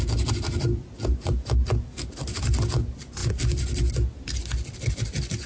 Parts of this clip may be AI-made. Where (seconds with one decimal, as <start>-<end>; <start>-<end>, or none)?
none

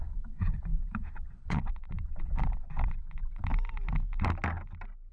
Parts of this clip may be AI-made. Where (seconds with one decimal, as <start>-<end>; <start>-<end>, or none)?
0.0-3.5

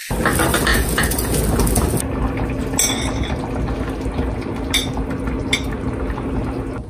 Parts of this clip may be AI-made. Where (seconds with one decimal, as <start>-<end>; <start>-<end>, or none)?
0.7-1.3

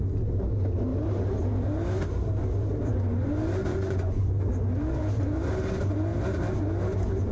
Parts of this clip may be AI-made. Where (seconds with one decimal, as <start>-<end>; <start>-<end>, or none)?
3.7-4.2